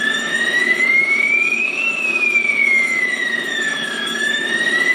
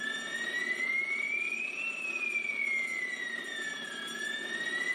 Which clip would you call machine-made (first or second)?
first